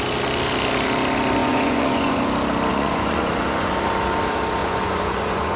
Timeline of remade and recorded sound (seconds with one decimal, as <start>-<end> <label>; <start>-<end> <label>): 0.0-1.4 recorded; 1.4-2.2 remade; 2.2-2.7 recorded; 2.7-3.7 remade; 3.7-4.6 recorded; 4.6-5.6 remade